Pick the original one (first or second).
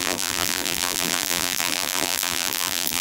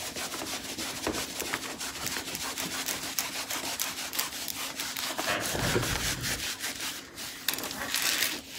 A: second